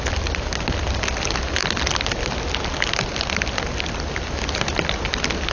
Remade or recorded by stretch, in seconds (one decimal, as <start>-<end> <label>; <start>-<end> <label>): 0.0-5.5 recorded